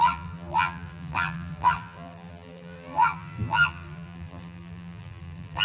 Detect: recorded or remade remade